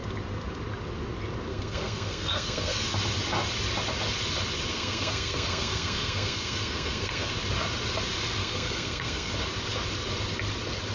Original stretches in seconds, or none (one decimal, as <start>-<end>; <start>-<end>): 0.0-1.5; 2.9-4.7; 7.3-8.4; 9.3-10.9